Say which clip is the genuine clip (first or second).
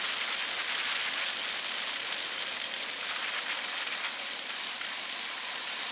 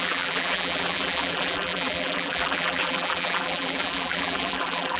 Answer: first